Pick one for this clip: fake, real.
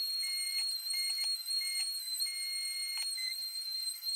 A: fake